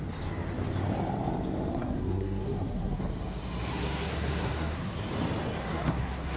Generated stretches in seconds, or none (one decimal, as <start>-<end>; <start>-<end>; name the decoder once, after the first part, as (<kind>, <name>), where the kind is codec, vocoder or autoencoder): 1.7-3.0 (codec, SNAC); 3.7-5.0; 5.6-6.4